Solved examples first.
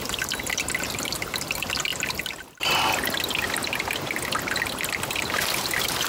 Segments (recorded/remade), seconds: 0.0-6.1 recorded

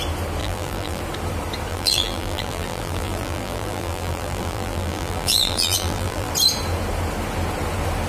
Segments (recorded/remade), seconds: 0.0-0.4 recorded; 0.4-1.0 remade; 1.0-1.7 recorded; 1.7-6.3 remade; 6.3-8.1 recorded

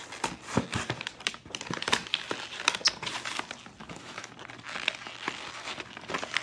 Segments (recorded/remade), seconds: 0.0-3.8 recorded; 3.8-4.3 remade; 4.3-6.4 recorded

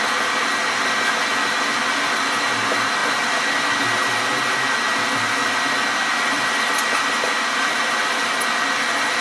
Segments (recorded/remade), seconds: 0.0-9.2 recorded

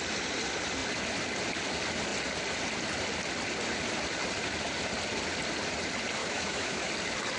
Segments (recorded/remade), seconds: 0.0-6.2 recorded; 6.2-6.9 remade; 6.9-7.4 recorded